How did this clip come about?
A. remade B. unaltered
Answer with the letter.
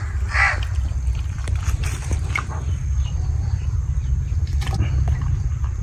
A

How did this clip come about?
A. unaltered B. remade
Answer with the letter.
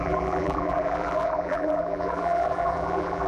B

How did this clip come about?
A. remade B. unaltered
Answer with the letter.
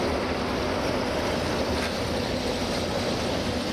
B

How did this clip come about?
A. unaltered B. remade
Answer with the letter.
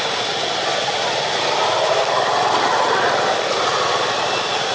A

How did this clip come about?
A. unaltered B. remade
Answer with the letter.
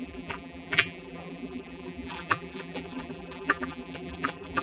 B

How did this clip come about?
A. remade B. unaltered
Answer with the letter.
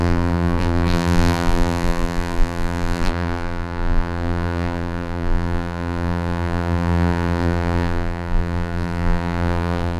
A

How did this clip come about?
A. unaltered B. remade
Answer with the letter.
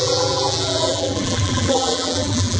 B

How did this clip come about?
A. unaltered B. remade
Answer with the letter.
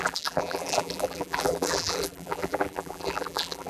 B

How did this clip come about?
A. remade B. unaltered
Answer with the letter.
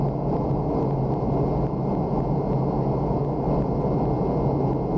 B